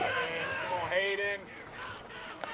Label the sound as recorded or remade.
remade